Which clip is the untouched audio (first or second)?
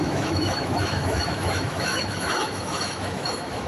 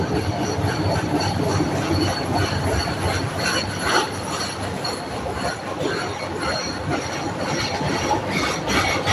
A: second